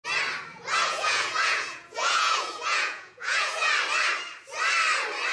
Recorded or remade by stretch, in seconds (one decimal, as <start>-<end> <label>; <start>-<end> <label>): 0.0-0.5 recorded; 0.5-3.7 remade; 3.7-5.3 recorded